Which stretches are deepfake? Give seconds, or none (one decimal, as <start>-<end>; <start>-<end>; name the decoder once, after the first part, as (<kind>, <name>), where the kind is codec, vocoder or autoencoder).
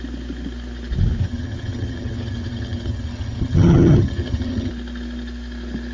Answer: 1.2-4.7 (vocoder, HiFi-GAN)